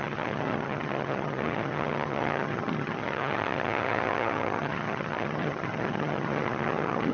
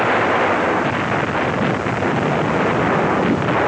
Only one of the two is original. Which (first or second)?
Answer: second